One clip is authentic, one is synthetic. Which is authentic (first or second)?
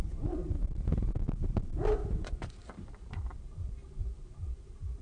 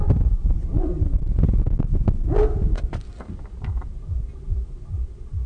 second